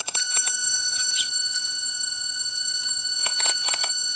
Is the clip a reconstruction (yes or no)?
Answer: yes